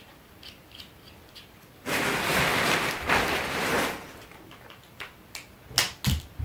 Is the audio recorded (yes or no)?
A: yes